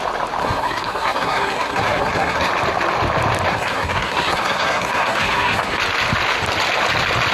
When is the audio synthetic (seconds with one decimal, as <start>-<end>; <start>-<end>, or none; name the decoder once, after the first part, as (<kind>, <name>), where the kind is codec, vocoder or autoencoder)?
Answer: 0.4-2.5 (codec, SNAC); 3.5-5.8